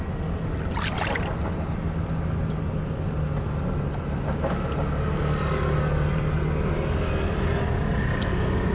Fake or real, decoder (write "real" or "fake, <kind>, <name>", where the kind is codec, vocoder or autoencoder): real